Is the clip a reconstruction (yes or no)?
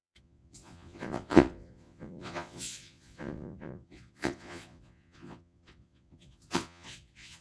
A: yes